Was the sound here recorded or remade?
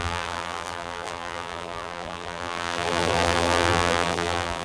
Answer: remade